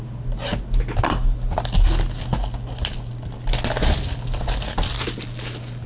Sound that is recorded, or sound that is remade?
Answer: recorded